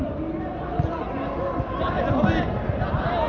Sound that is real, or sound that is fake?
real